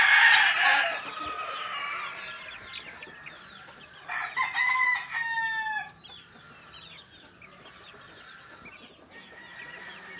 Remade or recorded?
recorded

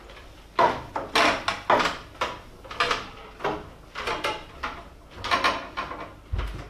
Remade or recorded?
recorded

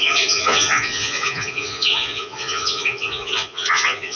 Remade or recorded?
remade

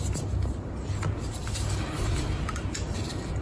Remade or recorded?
recorded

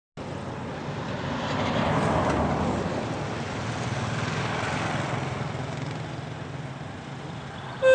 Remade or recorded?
recorded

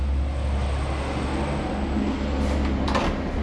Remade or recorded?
recorded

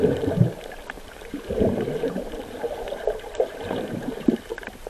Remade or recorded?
remade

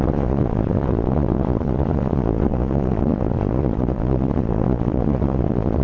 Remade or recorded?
remade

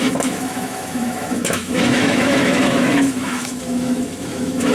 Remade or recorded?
remade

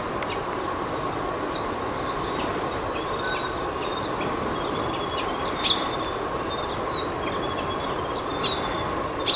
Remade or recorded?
recorded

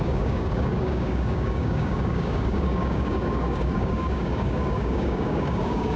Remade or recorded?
remade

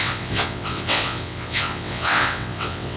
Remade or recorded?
remade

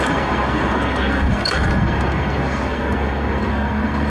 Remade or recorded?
remade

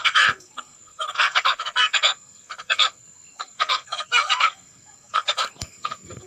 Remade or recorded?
remade